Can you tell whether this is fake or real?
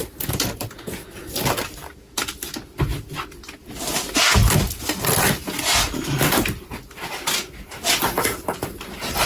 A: real